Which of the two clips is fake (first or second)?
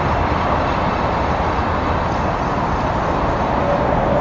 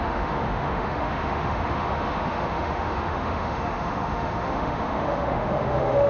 second